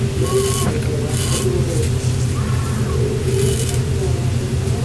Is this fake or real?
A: real